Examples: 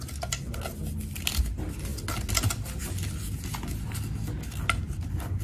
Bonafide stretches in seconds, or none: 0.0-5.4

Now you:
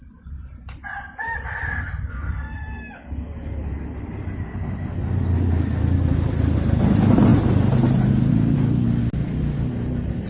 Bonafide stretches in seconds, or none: 0.0-10.3

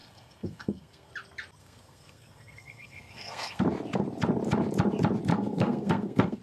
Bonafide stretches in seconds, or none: 1.1-1.6; 3.6-5.3

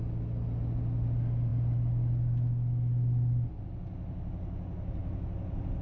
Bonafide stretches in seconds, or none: 0.0-5.8

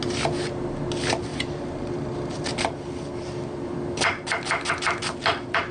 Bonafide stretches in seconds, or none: 0.0-5.7

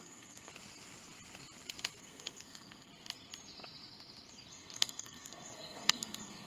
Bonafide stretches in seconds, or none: 0.5-2.0; 2.9-4.5

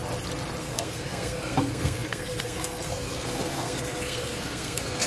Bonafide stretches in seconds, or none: 0.0-0.6